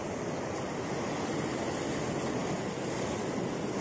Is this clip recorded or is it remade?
recorded